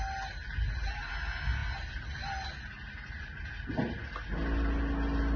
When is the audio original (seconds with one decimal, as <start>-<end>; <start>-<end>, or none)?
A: 0.0-5.4